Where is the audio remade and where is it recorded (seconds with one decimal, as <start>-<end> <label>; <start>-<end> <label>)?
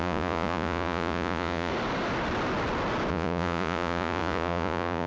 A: 0.0-1.7 remade; 1.7-3.1 recorded; 3.1-5.1 remade